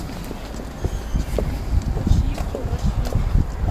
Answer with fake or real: real